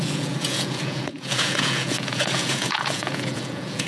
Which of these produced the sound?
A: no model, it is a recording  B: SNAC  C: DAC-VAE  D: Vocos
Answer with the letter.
D